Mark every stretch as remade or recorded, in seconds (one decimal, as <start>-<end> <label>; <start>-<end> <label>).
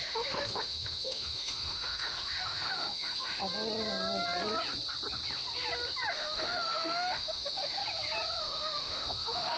0.0-3.4 remade; 3.4-6.1 recorded; 6.1-7.8 remade; 7.8-8.4 recorded; 8.4-9.6 remade